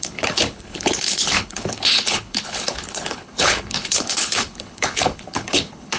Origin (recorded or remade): remade